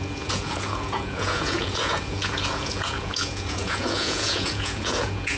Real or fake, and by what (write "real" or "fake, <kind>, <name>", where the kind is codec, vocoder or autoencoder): fake, vocoder, Vocos